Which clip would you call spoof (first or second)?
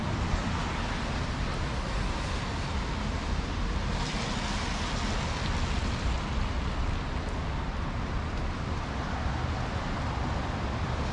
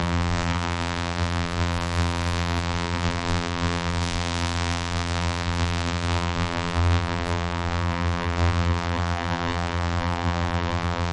second